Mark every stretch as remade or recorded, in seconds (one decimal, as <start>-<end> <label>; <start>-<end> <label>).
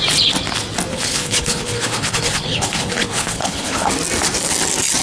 0.0-0.9 recorded; 0.9-3.9 remade; 3.9-5.0 recorded